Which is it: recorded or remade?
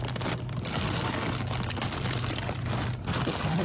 remade